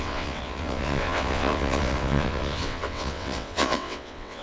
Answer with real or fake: fake